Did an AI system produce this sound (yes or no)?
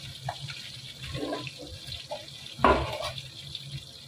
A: no